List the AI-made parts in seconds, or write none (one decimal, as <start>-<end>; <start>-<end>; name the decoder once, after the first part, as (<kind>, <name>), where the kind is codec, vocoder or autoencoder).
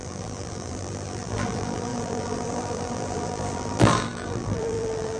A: 0.0-5.2 (vocoder, BigVGAN v2)